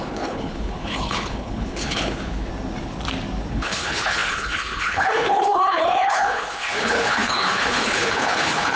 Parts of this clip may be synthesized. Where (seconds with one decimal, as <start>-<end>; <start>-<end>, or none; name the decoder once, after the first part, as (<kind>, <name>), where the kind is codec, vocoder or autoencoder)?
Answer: 0.0-2.5 (codec, HILCodec); 3.5-8.8